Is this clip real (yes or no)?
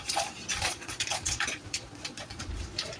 no